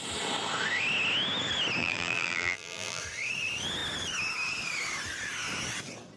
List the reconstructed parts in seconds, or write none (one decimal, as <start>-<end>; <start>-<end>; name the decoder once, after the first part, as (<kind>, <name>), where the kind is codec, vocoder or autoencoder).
1.8-3.0 (vocoder, BigVGAN v2)